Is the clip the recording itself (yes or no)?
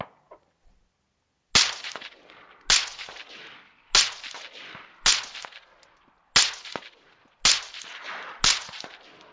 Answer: yes